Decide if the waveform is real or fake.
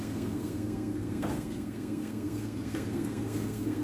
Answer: fake